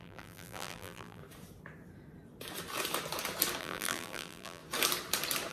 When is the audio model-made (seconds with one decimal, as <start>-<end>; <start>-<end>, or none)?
0.0-1.2; 3.6-4.6

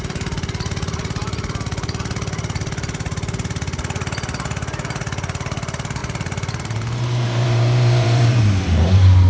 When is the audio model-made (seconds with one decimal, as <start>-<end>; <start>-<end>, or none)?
6.0-8.4

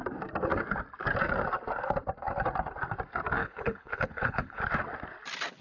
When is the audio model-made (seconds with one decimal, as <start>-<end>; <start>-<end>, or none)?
3.4-4.6

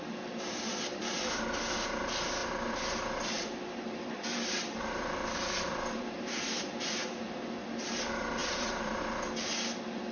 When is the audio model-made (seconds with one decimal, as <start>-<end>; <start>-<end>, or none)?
2.4-7.2; 8.4-9.0

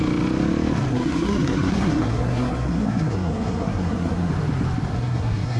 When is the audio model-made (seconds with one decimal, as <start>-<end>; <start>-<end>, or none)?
0.9-4.3; 4.9-5.6